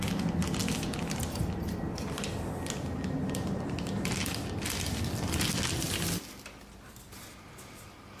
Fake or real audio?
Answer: real